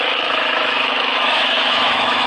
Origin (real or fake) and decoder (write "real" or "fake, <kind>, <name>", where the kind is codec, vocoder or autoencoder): fake, autoencoder, DAC-VAE